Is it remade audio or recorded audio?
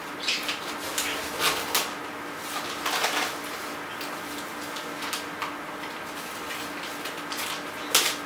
recorded